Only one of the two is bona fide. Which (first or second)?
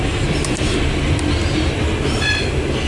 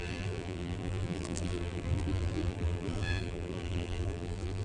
first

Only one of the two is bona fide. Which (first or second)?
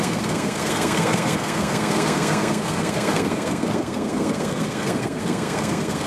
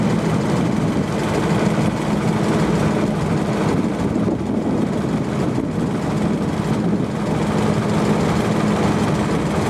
second